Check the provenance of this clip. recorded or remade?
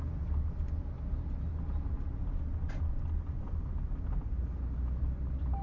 recorded